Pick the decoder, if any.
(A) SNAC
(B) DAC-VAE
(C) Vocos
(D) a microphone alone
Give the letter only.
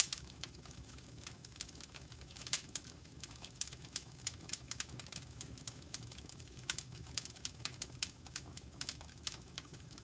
B